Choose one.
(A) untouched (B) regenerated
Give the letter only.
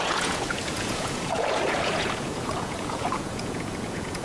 B